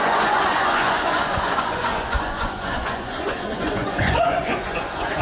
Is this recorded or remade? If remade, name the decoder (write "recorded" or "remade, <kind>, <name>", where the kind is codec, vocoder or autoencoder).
remade, vocoder, Vocos